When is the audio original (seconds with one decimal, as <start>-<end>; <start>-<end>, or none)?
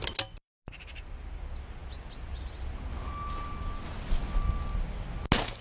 0.0-5.6